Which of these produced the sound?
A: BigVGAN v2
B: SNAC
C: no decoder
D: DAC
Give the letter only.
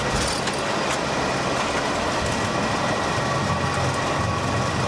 C